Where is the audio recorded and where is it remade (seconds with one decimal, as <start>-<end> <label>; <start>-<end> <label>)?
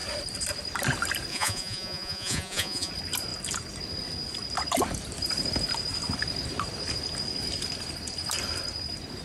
0.0-1.3 recorded; 1.3-2.9 remade; 2.9-9.2 recorded